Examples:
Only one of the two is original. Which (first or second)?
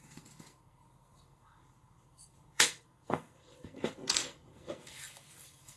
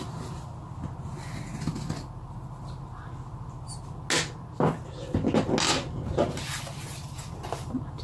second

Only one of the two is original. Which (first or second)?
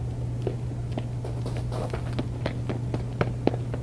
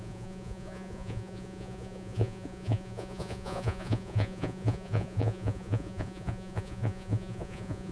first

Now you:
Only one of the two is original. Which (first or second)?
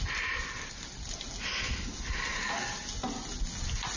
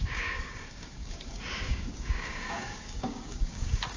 first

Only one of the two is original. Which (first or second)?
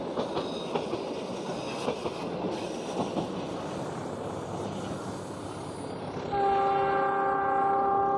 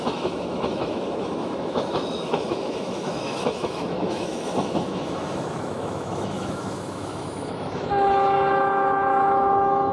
first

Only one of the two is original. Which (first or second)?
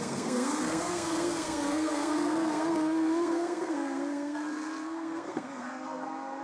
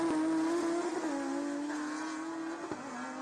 second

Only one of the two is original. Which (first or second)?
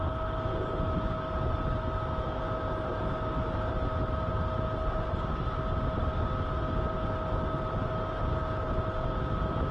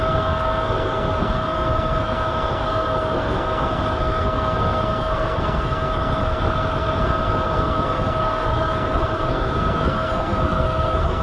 first